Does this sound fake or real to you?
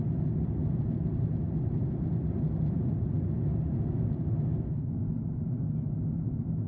real